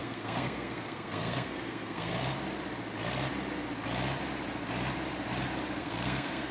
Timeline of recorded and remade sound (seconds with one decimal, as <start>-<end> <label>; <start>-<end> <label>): 0.0-2.1 remade; 2.1-5.8 recorded; 5.8-6.5 remade